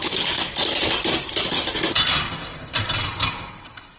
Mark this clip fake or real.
real